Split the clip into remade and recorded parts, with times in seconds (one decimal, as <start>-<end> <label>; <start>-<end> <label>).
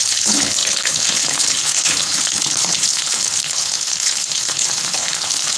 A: 0.0-5.6 remade